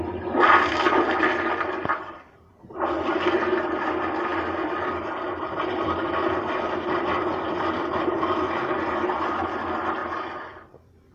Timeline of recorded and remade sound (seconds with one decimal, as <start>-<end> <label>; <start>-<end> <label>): 0.0-11.1 remade